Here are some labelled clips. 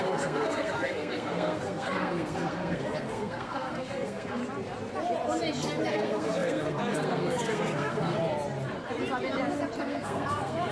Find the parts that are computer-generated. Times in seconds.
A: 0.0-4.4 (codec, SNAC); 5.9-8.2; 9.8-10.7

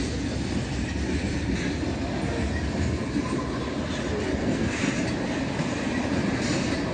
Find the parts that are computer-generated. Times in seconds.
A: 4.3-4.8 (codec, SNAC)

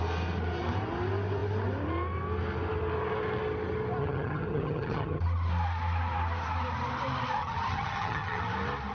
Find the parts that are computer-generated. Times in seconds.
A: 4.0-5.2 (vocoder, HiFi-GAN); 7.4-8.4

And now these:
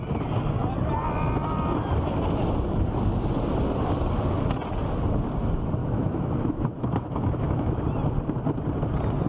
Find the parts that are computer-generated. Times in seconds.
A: 5.8-7.8 (autoencoder, DAC-VAE)

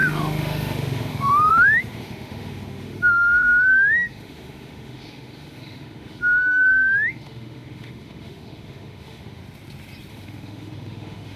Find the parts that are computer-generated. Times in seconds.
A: 0.0-9.4 (autoencoder, DAC-VAE); 10.1-11.4

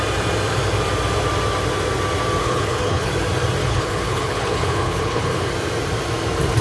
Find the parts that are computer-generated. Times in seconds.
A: 2.4-3.1 (codec, HILCodec); 3.6-5.5